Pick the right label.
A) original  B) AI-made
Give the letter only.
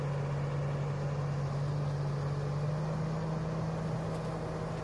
A